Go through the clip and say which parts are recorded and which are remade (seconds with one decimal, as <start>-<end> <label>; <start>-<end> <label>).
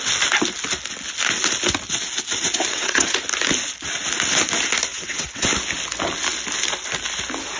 0.0-2.7 recorded; 2.7-3.2 remade; 3.2-4.9 recorded; 4.9-5.4 remade; 5.4-7.6 recorded